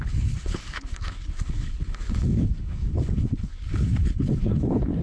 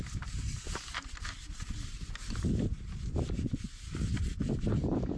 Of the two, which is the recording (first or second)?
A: second